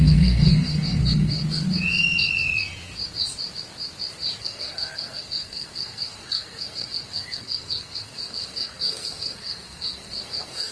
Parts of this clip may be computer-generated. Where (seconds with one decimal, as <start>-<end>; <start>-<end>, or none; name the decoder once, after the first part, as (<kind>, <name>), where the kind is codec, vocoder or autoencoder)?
0.0-1.4 (codec, SNAC); 4.4-10.7